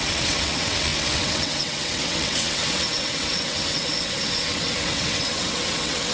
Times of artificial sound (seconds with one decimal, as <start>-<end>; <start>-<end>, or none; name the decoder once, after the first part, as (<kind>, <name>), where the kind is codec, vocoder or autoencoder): 0.0-6.1 (vocoder, WaveNeXt)